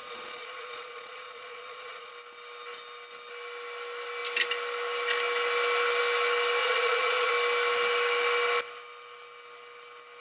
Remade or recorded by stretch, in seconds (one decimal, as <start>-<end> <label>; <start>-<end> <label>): 0.0-2.1 remade; 2.1-6.6 recorded; 6.6-7.3 remade; 7.3-10.2 recorded